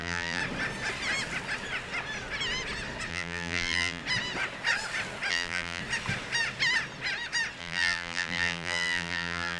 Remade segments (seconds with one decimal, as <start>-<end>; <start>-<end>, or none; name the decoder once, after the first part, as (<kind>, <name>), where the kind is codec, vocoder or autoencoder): 0.0-0.4 (vocoder, BigVGAN v2); 3.1-4.0; 5.3-5.8; 7.6-9.6